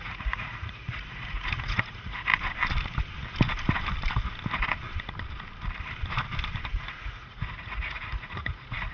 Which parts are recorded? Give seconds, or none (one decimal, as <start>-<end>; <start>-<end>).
2.3-6.8